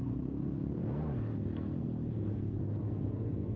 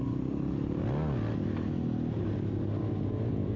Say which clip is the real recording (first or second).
second